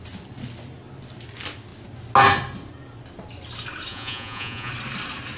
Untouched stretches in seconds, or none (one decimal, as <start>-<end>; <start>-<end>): 0.0-3.9; 4.7-5.4

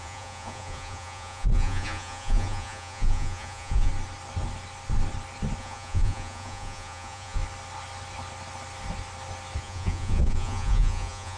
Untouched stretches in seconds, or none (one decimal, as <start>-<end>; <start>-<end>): 3.9-5.6; 7.4-9.6

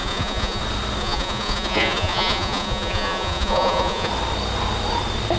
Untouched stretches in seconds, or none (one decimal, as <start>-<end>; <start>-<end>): 0.6-1.0; 4.1-5.4

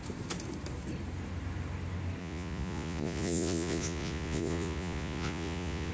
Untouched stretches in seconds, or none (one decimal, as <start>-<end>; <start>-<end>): 0.0-2.2

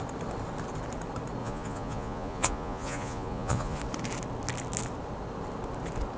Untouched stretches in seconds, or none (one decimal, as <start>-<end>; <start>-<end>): 0.0-1.4; 3.8-6.2